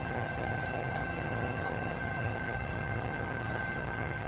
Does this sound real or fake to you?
fake